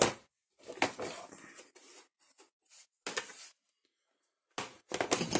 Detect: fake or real real